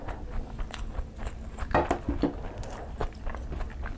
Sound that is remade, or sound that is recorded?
recorded